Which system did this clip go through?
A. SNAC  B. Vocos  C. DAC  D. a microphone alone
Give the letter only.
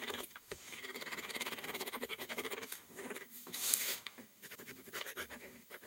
C